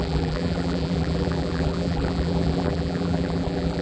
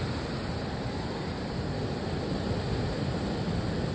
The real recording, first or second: second